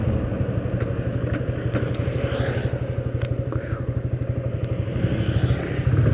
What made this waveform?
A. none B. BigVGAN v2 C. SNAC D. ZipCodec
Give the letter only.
A